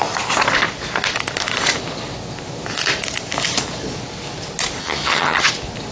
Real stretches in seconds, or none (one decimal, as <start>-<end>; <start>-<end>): 0.0-4.8; 5.5-5.9